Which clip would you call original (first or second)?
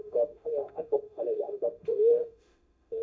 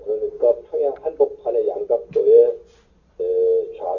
second